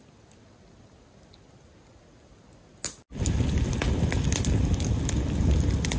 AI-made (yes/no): no